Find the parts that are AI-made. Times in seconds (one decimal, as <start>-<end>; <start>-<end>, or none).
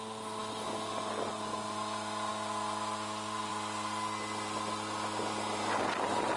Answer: none